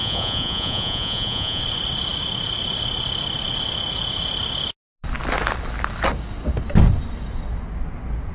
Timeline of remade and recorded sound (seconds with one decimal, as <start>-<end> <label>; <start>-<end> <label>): 0.0-1.6 remade; 1.6-8.3 recorded